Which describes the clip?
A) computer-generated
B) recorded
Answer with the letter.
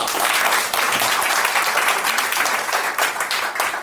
A